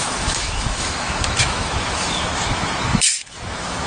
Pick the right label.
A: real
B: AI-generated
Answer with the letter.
B